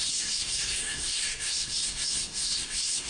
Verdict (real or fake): fake